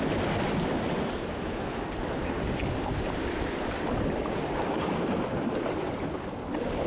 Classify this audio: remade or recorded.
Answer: recorded